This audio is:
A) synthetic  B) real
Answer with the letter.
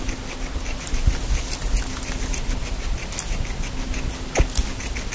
B